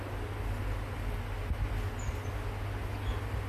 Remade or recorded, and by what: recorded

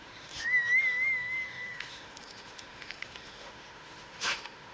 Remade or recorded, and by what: remade, autoencoder, DAC-VAE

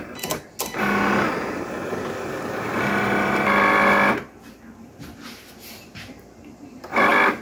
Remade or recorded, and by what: recorded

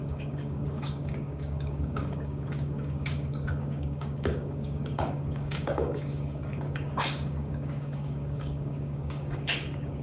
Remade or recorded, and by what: remade, codec, DAC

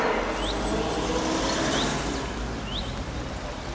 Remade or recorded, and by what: recorded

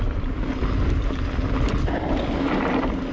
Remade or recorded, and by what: recorded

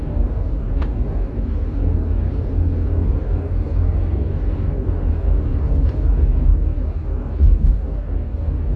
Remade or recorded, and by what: remade, codec, DAC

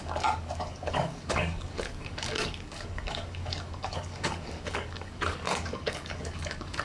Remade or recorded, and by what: remade, codec, DAC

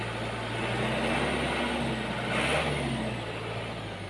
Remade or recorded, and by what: recorded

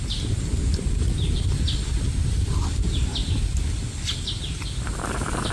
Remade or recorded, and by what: recorded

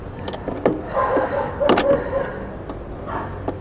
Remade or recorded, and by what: recorded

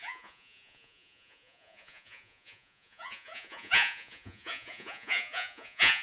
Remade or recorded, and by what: remade, vocoder, Vocos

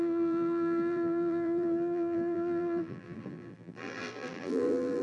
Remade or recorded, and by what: remade, vocoder, BigVGAN v2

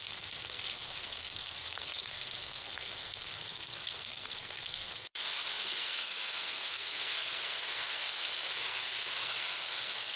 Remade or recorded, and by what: remade, codec, SNAC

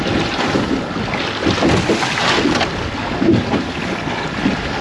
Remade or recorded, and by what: recorded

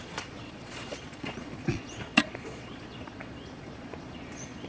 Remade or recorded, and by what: remade, vocoder, Vocos